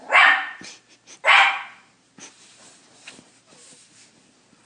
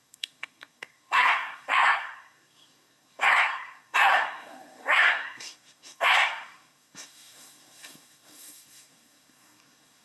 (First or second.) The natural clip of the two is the first